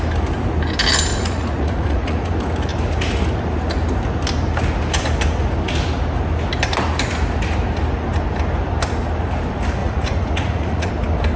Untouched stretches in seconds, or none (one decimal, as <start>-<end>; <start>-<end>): 0.0-1.1; 2.3-9.8; 10.9-11.4